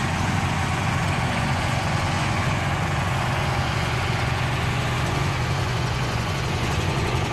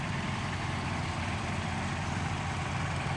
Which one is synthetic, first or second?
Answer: first